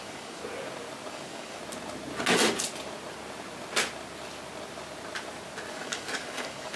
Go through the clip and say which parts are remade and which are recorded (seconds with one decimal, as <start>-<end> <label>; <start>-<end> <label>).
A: 0.0-0.4 remade; 0.4-1.1 recorded; 1.1-1.6 remade; 1.6-5.7 recorded; 5.7-6.8 remade